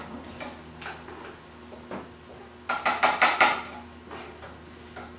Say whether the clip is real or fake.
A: real